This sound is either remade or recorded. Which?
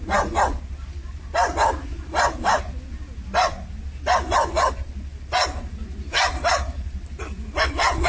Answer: recorded